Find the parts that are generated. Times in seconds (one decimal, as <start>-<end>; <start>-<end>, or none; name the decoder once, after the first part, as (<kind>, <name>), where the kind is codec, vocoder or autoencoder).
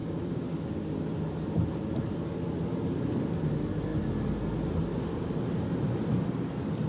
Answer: 0.0-1.0 (codec, DAC); 4.9-5.4